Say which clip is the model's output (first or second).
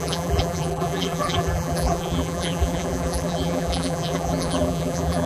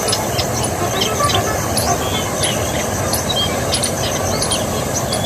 first